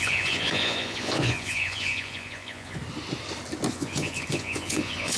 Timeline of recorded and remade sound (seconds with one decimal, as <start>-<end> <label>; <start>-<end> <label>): 0.0-2.8 remade; 2.8-3.7 recorded; 3.7-5.2 remade